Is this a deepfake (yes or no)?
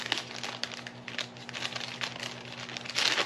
no